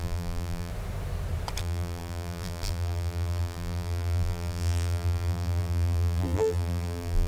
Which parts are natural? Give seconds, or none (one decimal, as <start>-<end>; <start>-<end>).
0.7-1.6

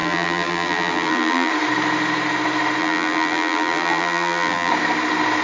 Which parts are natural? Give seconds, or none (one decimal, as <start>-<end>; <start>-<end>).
1.5-2.8; 4.7-5.4

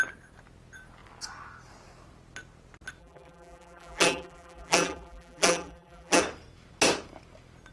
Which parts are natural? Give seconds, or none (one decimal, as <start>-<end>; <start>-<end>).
0.0-3.0; 6.2-7.7

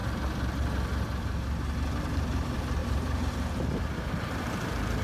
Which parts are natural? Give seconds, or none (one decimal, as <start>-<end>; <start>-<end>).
0.0-1.2

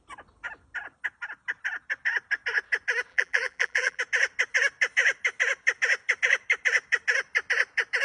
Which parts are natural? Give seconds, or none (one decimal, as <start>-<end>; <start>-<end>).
0.0-3.1; 4.0-8.0

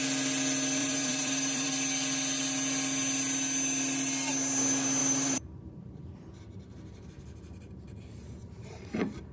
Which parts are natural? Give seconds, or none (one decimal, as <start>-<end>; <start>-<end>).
0.0-0.8; 1.7-5.0

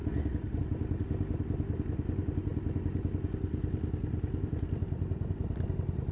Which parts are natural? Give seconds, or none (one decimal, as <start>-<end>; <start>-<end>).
0.0-6.1

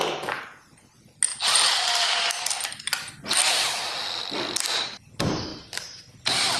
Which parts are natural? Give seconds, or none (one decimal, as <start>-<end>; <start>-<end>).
0.0-1.3; 1.9-5.5; 6.0-6.6